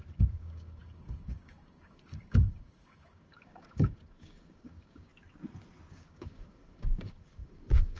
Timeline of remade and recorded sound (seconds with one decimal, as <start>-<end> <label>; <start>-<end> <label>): 0.0-5.1 remade; 5.1-5.9 recorded; 5.9-8.0 remade

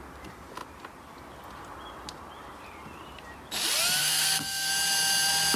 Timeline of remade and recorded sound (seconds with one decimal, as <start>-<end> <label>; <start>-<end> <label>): 0.0-4.0 recorded; 4.0-4.7 remade; 4.7-5.6 recorded

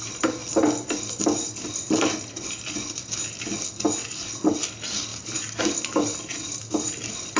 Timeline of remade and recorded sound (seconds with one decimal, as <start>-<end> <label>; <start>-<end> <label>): 0.0-0.4 remade; 0.4-1.2 recorded; 1.2-3.0 remade; 3.0-4.6 recorded; 4.6-7.4 remade

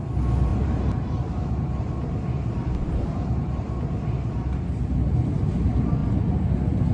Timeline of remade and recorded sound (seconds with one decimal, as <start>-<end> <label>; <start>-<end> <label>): 0.0-0.5 recorded; 0.5-4.6 remade; 4.6-6.9 recorded

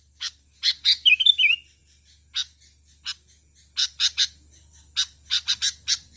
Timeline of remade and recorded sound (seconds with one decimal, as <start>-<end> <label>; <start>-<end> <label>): 0.0-6.2 recorded